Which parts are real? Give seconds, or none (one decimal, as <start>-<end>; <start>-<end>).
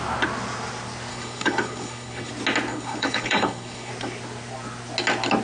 0.0-1.1; 2.3-2.7; 3.9-5.4